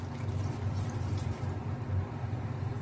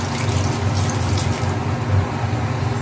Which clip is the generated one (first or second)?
first